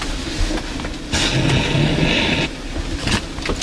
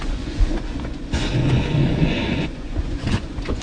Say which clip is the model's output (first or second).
second